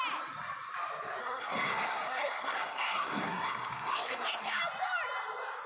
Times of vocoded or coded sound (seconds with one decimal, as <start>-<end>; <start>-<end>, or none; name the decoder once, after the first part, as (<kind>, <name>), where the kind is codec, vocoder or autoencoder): 1.2-4.6 (codec, SNAC)